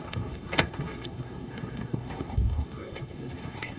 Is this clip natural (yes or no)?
no